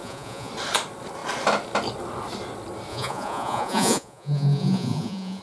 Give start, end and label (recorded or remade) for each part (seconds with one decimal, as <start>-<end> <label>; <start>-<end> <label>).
0.0-0.5 remade; 0.5-2.9 recorded; 2.9-5.4 remade